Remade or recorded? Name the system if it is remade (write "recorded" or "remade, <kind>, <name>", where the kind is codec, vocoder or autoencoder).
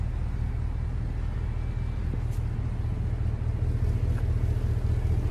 recorded